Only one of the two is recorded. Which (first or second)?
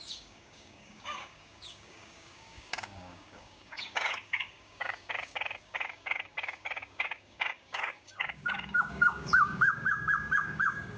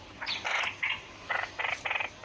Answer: second